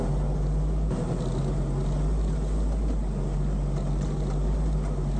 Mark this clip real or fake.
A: real